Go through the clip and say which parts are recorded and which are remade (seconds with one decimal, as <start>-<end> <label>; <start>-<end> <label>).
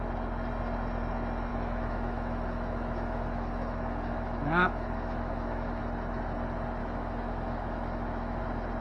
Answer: 0.0-1.5 recorded; 1.5-5.8 remade; 5.8-6.8 recorded; 6.8-8.4 remade; 8.4-8.8 recorded